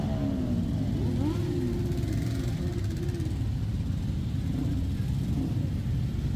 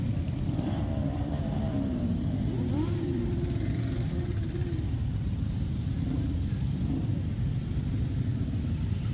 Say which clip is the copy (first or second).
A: second